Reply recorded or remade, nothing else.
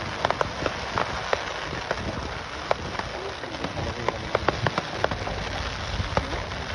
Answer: recorded